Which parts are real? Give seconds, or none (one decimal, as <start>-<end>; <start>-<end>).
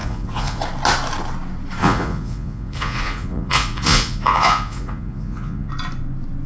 0.6-1.8; 5.7-6.5